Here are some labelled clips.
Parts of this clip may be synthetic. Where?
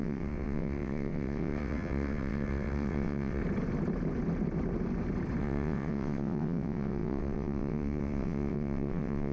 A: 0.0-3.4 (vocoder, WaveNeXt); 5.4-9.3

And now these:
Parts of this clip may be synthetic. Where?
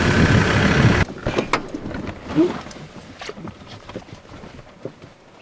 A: 3.0-4.0 (vocoder, BigVGAN v2)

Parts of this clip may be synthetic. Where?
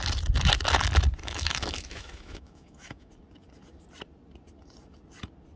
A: 1.2-3.1 (autoencoder, DAC-VAE)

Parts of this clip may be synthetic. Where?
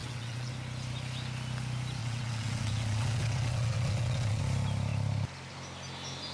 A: 0.0-0.5 (vocoder, WaveNeXt); 2.0-4.4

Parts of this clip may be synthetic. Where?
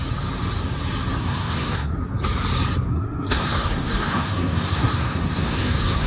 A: 1.2-2.0 (codec, SNAC); 2.9-6.1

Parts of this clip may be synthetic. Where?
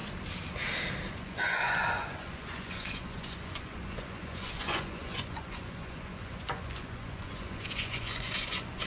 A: 1.1-8.9 (vocoder, Vocos)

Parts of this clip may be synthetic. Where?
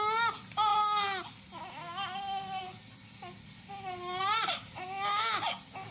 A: 4.2-4.8 (vocoder, BigVGAN v2)